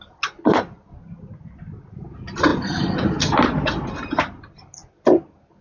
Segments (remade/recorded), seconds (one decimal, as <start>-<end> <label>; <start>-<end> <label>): 0.0-5.6 recorded